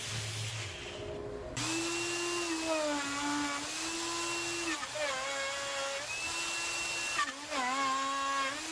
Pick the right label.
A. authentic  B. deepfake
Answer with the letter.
A